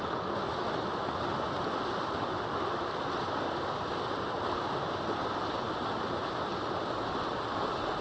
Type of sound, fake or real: real